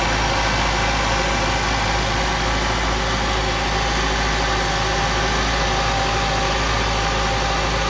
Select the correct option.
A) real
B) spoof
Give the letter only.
A